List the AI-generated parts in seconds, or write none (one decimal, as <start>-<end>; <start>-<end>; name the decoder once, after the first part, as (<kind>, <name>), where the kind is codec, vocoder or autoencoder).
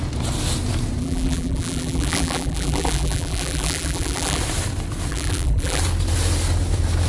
1.0-4.4 (vocoder, BigVGAN v2); 5.1-5.8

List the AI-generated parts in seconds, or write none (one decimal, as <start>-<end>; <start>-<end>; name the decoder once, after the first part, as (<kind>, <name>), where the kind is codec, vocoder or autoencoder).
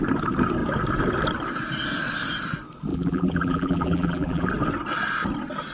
2.9-4.5 (vocoder, BigVGAN v2)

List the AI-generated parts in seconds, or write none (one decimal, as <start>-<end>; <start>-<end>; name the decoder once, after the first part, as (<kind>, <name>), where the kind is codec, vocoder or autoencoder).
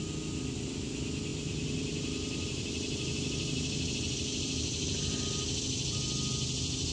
1.3-5.2 (vocoder, BigVGAN v2)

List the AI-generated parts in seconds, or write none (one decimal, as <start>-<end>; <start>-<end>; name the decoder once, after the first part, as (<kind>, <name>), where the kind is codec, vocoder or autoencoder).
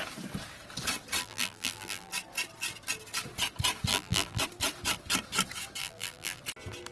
1.2-2.1 (vocoder, BigVGAN v2); 3.9-4.4; 5.8-6.4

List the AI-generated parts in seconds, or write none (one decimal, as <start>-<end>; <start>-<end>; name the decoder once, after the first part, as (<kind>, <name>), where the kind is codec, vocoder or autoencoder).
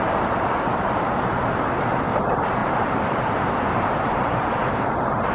0.0-5.3 (vocoder, BigVGAN v2)